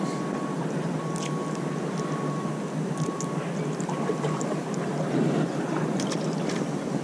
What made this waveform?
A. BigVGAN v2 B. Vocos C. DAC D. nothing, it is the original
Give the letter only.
D